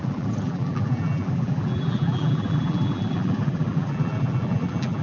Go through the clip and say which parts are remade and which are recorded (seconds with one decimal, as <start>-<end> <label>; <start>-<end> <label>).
0.0-5.0 remade